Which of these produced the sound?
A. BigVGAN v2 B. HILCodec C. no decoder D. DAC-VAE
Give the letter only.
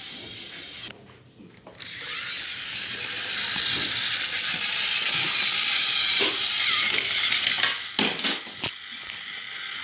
C